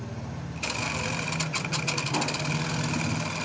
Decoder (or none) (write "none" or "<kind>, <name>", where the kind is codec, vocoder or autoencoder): none